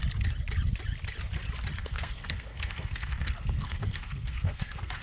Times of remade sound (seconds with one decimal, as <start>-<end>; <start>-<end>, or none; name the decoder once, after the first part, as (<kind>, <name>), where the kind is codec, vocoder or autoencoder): 1.8-5.0 (codec, SNAC)

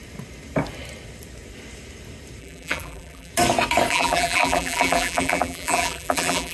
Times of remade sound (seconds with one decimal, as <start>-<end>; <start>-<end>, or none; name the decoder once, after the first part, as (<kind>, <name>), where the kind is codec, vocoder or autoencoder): 2.4-3.3 (vocoder, BigVGAN v2); 3.9-6.5